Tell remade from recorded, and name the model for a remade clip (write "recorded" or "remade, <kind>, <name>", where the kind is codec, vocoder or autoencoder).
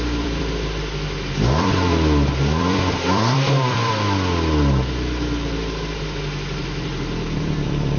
remade, vocoder, BigVGAN v2